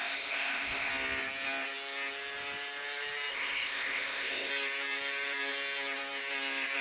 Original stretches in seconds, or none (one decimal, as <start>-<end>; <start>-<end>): 0.9-3.3; 4.5-6.8